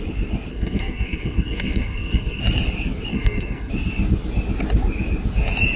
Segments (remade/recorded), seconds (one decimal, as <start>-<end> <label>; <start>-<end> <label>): 0.0-0.5 recorded; 0.5-2.4 remade; 2.4-3.1 recorded; 3.1-3.7 remade; 3.7-5.8 recorded